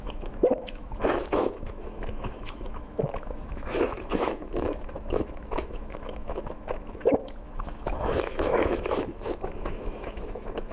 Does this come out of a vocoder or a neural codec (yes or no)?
yes